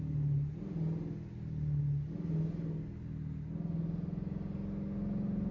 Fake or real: real